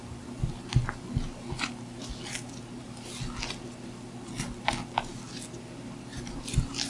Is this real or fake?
real